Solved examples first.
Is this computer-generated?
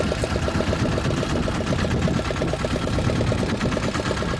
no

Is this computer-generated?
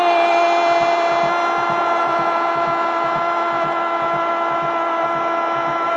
no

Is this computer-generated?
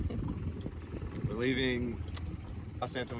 no